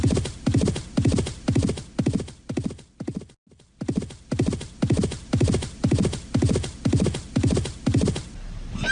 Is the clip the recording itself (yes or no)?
yes